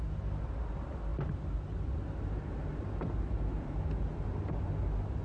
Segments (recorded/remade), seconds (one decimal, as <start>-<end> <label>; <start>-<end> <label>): 0.0-1.1 recorded; 1.1-4.2 remade; 4.2-5.2 recorded